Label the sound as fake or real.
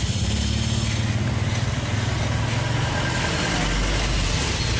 real